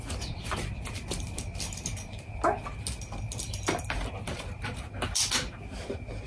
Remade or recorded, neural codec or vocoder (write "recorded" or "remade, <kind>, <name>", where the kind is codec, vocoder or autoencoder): recorded